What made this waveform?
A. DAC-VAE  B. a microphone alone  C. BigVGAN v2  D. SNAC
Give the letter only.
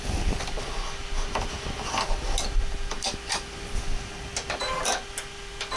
B